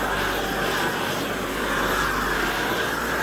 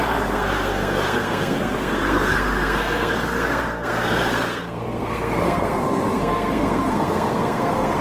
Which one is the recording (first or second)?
first